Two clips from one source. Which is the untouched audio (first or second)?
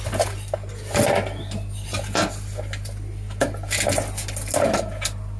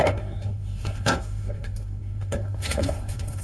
first